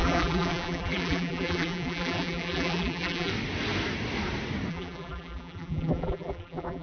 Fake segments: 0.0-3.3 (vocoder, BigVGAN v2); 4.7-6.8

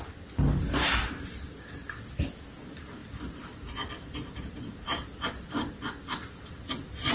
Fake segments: 3.0-5.2 (vocoder, BigVGAN v2); 6.2-7.1

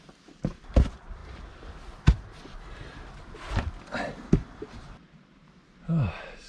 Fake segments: 1.2-5.1 (vocoder, BigVGAN v2)

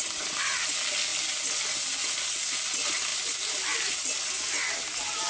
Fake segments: none

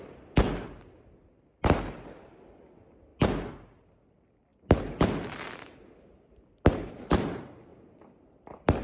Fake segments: none

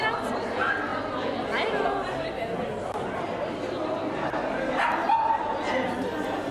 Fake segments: none

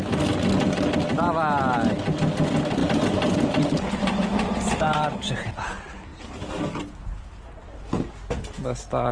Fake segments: 2.8-5.5 (vocoder, BigVGAN v2); 6.1-8.1

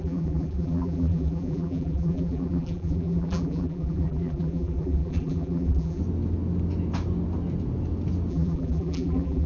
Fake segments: 0.0-6.0 (vocoder, BigVGAN v2); 8.3-9.5